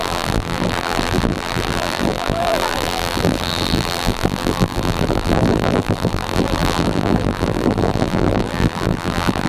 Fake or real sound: fake